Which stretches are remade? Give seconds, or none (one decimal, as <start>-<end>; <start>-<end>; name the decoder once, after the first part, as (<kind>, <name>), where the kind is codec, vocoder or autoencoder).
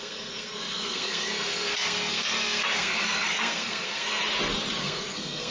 0.0-4.2 (codec, SNAC); 4.8-5.5